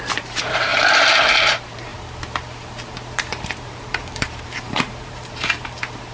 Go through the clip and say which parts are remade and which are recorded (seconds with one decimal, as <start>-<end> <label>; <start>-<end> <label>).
0.0-0.7 remade; 0.7-1.3 recorded; 1.3-6.1 remade